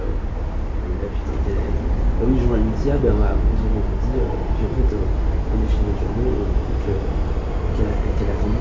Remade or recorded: recorded